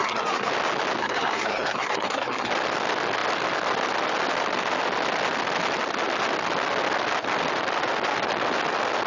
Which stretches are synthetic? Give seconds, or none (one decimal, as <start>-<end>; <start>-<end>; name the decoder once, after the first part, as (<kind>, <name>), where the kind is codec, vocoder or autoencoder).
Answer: 0.0-0.5 (codec, SNAC); 1.0-2.5